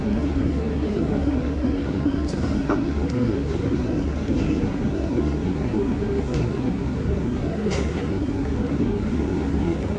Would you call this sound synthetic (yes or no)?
yes